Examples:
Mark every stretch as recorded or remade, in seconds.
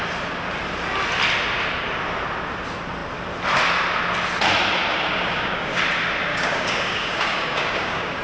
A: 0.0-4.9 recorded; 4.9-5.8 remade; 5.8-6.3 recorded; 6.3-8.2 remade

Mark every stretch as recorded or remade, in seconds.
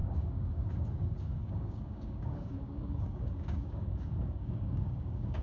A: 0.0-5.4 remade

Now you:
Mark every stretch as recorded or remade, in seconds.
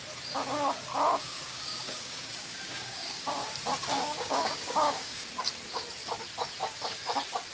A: 0.0-1.1 recorded; 1.1-3.3 remade; 3.3-3.9 recorded; 3.9-5.3 remade; 5.3-7.5 recorded